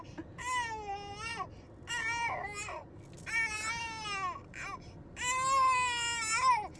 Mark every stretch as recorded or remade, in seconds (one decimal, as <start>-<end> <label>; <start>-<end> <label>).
0.0-6.8 recorded